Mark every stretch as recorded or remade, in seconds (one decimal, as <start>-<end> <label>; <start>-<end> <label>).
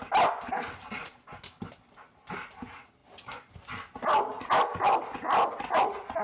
0.0-6.2 recorded